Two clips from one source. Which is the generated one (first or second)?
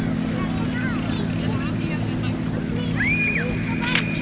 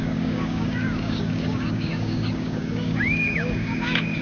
second